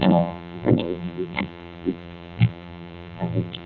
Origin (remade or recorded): remade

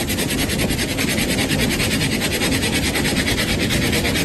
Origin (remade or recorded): remade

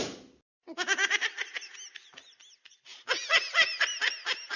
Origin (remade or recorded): recorded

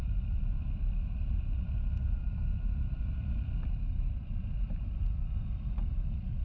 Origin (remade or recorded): remade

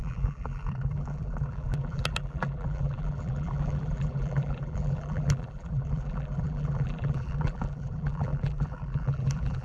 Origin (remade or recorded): remade